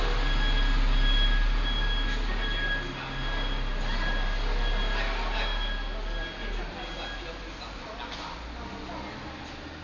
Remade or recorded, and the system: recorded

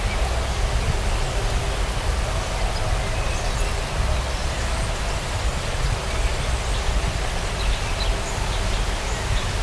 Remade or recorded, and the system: recorded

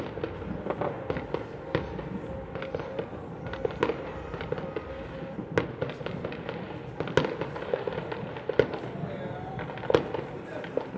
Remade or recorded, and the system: recorded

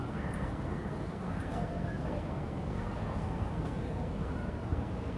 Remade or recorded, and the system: remade, codec, SNAC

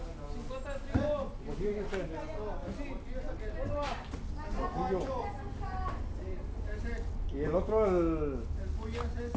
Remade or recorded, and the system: recorded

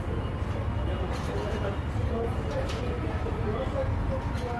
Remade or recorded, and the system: recorded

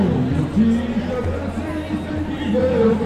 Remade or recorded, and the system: recorded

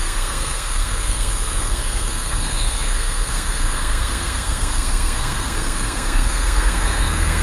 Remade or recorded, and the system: remade, codec, SNAC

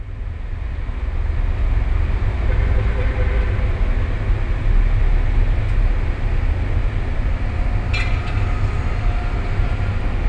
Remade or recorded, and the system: recorded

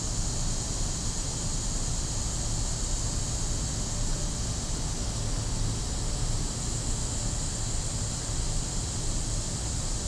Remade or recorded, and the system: recorded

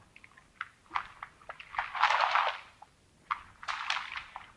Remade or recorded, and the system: recorded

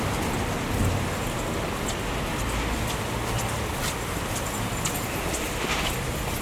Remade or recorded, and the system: recorded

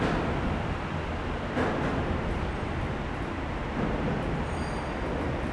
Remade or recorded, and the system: recorded